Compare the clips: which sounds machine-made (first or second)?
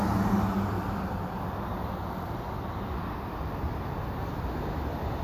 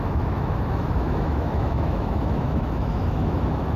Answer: second